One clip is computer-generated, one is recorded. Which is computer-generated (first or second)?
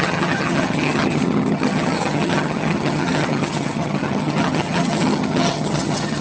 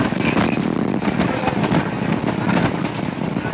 first